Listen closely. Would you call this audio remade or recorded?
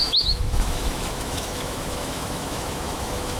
remade